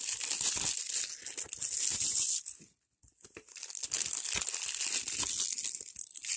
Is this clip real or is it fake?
real